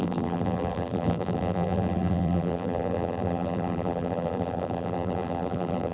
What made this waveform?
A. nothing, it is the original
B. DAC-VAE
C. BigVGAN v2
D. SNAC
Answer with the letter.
C